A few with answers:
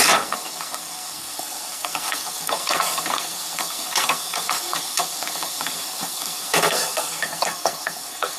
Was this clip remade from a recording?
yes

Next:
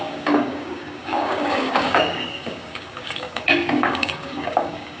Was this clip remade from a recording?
yes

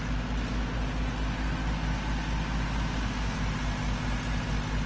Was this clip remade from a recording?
no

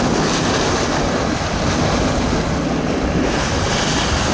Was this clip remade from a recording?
no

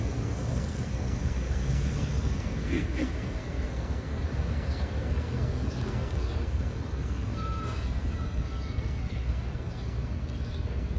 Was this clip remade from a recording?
yes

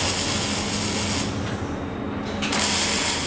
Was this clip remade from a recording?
no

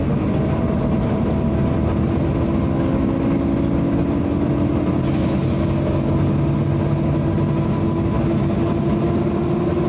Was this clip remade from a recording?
no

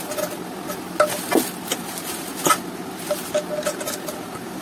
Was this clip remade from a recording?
no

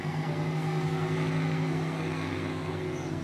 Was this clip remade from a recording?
yes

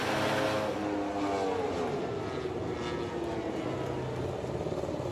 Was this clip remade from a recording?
no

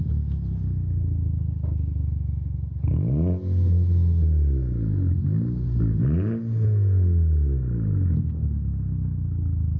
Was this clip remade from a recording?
no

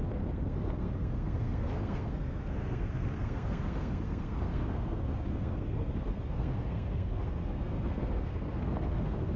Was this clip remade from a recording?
yes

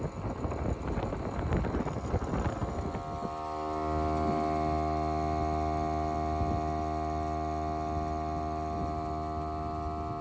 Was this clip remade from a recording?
no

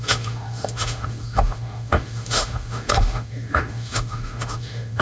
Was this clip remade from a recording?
yes